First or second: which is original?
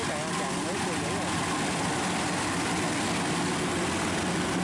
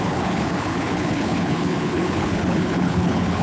first